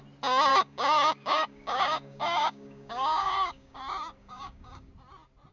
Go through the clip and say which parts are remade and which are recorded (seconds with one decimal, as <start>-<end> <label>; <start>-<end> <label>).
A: 0.0-0.5 recorded; 0.5-3.8 remade; 3.8-4.2 recorded; 4.2-4.9 remade; 4.9-5.5 recorded